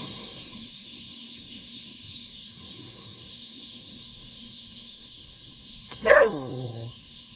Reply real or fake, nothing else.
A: fake